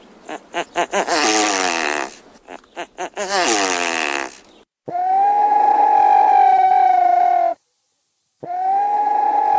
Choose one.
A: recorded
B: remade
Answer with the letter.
A